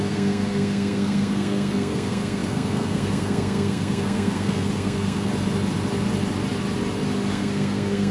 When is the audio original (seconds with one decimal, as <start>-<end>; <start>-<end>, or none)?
5.3-7.3